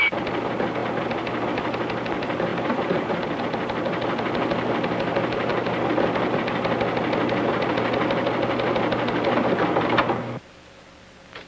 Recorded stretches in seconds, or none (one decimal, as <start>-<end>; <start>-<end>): 0.0-2.5; 3.4-11.5